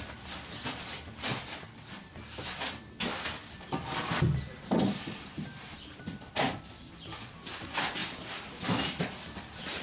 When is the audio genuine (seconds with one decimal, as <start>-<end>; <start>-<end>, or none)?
1.3-3.0